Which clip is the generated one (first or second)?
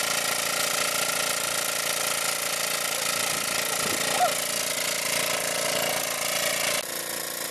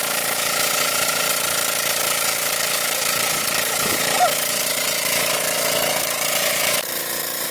second